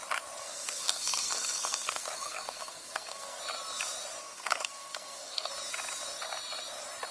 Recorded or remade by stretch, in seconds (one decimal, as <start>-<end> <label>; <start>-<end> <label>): 0.0-0.4 recorded; 0.4-3.4 remade; 3.4-4.2 recorded; 4.2-5.5 remade; 5.5-7.1 recorded